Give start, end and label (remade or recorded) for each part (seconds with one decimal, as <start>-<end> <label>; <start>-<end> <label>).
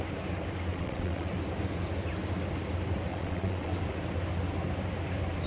0.0-0.7 recorded; 0.7-1.3 remade; 1.3-3.1 recorded; 3.1-3.8 remade; 3.8-5.5 recorded